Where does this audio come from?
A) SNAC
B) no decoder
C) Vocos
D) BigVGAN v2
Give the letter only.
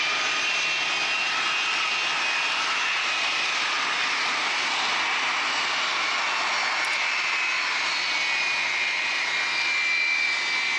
B